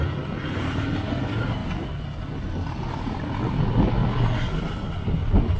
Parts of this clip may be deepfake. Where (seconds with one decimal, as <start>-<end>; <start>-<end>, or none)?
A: none